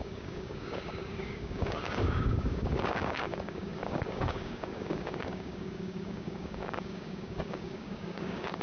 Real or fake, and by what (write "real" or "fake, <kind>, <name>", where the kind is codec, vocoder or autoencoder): fake, codec, DAC